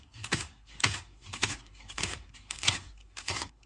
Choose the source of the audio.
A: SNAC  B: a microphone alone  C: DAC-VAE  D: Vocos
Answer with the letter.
A